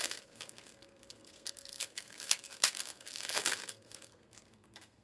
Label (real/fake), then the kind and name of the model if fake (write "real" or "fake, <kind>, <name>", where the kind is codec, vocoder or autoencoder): fake, codec, SNAC